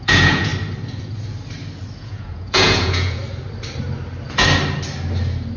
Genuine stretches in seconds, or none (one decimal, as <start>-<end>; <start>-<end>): 0.5-2.0; 3.2-5.6